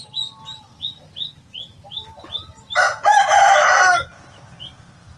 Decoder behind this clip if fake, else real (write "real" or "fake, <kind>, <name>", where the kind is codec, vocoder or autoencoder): real